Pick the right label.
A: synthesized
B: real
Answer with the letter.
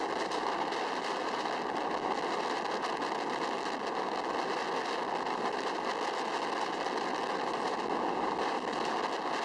B